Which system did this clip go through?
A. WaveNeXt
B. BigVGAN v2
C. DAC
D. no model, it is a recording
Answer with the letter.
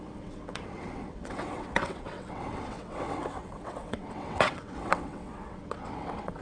A